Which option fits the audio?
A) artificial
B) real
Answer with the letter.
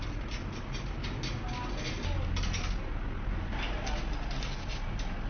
B